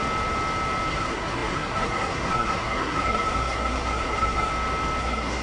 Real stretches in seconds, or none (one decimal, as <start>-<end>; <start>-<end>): 0.0-0.9; 4.5-5.0